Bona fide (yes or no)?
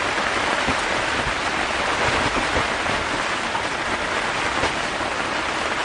yes